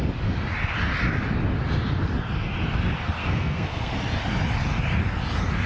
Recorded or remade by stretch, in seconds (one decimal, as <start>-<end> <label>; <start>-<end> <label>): 0.0-3.2 recorded; 3.2-3.9 remade; 3.9-5.7 recorded